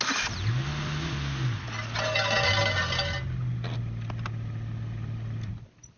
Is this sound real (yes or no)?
yes